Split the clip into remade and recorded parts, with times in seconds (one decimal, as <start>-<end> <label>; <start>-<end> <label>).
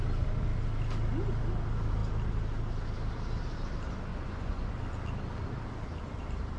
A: 0.0-4.1 recorded; 4.1-4.8 remade; 4.8-6.6 recorded